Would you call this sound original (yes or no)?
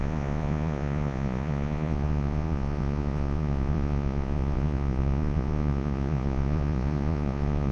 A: no